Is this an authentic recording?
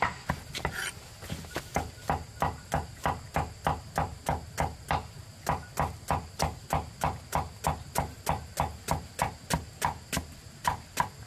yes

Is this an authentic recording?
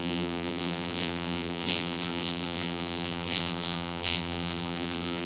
no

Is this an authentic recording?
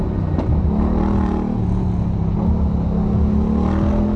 yes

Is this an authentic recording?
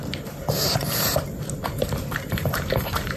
no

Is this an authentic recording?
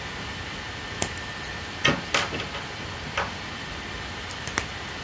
yes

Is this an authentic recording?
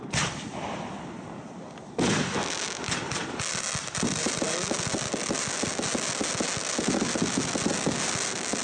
yes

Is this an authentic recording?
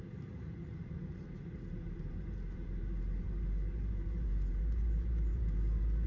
no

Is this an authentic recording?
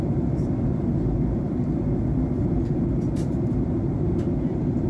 no